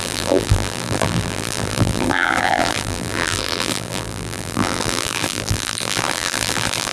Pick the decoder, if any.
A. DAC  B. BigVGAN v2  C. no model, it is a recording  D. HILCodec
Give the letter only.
B